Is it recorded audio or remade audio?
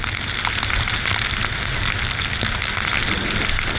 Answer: recorded